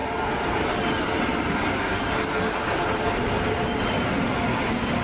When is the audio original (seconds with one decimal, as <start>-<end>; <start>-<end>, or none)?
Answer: 0.0-5.0